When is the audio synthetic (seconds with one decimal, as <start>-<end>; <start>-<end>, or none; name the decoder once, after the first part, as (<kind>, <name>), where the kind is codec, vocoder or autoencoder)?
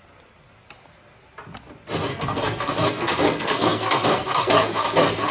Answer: 2.1-5.3 (codec, SNAC)